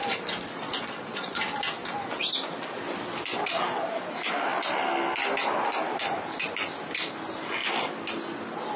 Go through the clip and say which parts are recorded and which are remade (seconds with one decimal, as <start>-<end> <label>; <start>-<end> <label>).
0.0-0.6 recorded; 0.6-1.4 remade; 1.4-8.8 recorded